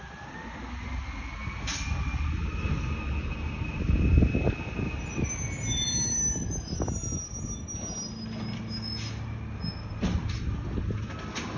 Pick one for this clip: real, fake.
real